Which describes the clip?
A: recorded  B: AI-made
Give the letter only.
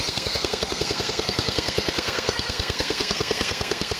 B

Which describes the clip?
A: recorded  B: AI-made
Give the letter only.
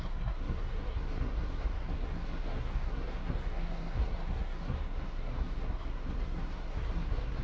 B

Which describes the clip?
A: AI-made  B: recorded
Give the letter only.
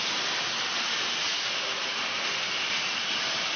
B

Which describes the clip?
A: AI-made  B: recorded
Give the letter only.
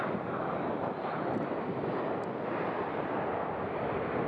B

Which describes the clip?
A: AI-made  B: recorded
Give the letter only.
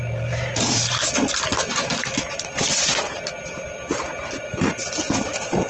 B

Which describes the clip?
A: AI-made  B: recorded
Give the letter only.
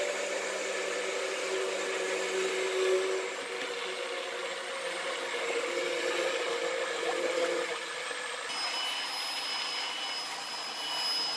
B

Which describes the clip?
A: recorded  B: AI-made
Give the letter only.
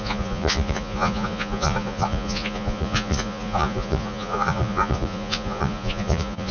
B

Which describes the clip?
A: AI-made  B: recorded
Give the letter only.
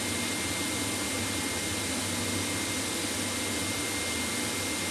B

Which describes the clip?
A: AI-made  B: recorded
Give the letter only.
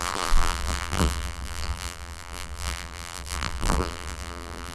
A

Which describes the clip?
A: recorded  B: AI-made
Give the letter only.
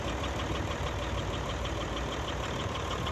B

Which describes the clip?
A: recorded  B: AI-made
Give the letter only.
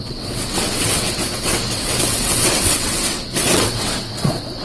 B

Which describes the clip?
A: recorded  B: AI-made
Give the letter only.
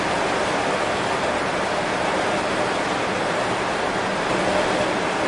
A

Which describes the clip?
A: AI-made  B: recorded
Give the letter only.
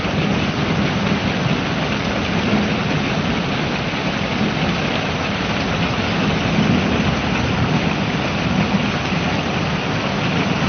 B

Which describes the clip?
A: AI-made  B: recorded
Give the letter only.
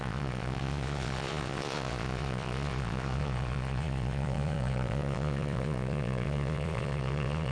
A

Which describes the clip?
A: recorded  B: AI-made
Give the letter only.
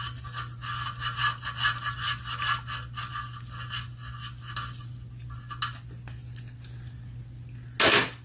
A